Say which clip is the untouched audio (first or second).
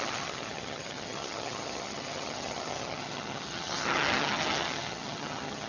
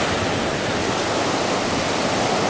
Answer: second